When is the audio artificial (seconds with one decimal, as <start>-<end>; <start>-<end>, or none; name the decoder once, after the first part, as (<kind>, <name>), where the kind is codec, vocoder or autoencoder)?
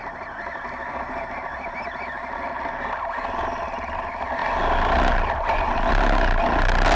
none